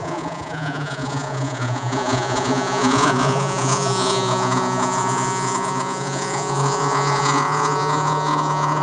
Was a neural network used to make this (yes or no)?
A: yes